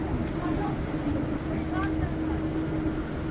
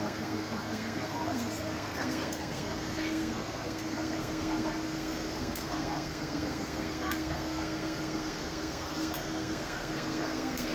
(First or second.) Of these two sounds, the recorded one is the first